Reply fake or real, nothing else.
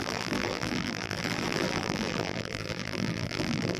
fake